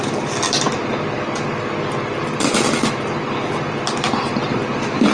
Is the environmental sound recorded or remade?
recorded